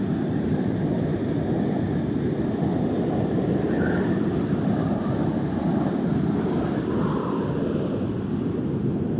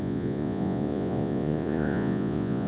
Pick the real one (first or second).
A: first